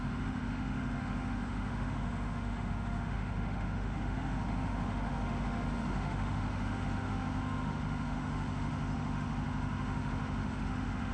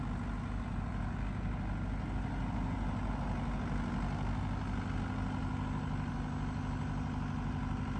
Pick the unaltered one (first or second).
second